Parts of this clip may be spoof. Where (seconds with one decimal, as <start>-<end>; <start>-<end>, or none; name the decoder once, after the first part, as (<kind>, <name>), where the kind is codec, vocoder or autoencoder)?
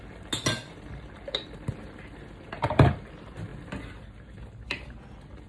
none